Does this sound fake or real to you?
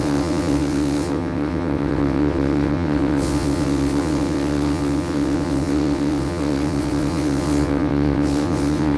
fake